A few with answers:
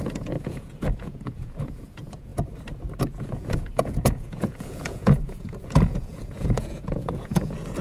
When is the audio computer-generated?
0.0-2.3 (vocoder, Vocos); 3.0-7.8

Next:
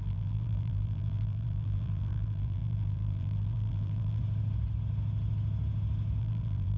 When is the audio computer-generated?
0.0-4.2 (vocoder, BigVGAN v2); 6.2-6.8

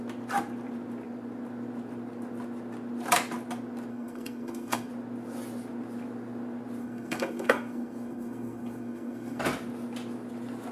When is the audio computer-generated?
3.9-4.9 (codec, SNAC); 6.8-9.4